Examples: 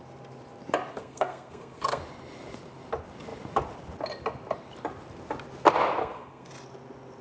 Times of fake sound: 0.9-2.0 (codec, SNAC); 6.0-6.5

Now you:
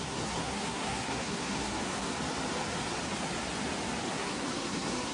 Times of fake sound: 0.0-2.1 (codec, SNAC); 4.1-5.1

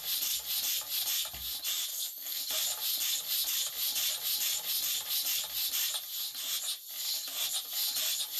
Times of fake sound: 1.9-2.4 (codec, SNAC)